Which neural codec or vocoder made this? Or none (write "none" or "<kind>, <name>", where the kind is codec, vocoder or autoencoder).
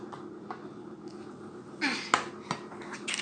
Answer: none